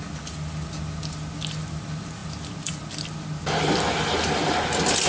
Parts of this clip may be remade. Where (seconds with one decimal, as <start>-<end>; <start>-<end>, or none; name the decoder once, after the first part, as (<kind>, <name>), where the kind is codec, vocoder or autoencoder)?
none